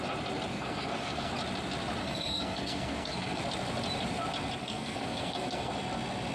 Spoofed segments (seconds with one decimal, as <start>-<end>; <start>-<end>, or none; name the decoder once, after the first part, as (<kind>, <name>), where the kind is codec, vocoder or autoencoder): 0.5-1.3 (codec, SNAC); 2.0-3.4; 4.6-5.7